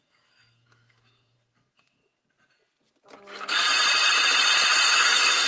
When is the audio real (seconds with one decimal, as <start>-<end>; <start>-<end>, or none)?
2.0-4.9